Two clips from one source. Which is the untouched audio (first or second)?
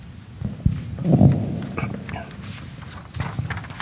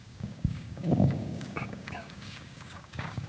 first